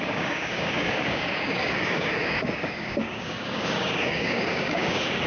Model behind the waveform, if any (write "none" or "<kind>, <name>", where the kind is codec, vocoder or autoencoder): codec, DAC